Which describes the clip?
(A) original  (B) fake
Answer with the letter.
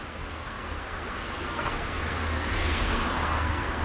B